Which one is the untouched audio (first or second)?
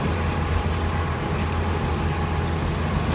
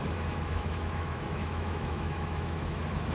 first